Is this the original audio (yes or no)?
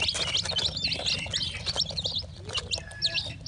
yes